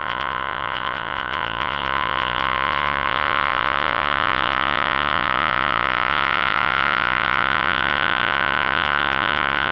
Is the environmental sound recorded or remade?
remade